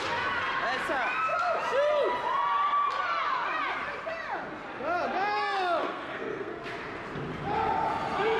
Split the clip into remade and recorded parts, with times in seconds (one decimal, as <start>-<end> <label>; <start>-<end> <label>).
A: 0.0-5.8 recorded; 5.8-6.6 remade; 6.6-8.4 recorded